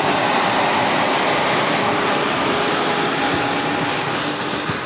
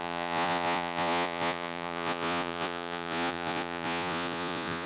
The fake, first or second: second